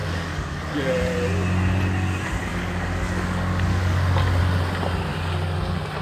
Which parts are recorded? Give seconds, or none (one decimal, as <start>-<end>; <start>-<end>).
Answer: 0.8-2.5; 4.4-5.1; 5.6-6.0